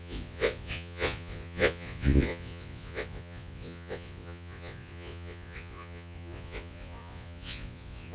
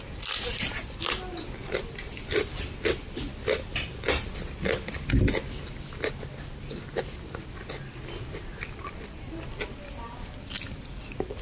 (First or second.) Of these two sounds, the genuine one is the second